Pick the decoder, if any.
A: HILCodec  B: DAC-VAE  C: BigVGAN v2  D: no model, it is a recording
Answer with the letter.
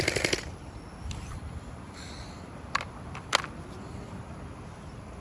C